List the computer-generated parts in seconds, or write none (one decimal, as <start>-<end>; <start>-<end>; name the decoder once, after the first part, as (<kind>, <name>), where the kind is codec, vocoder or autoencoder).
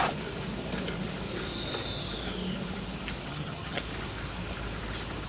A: 3.3-3.8 (vocoder, HiFi-GAN)